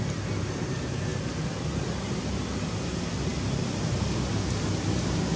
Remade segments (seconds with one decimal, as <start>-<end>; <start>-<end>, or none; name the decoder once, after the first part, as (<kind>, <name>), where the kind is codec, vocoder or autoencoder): none